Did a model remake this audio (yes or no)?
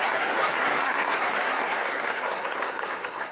yes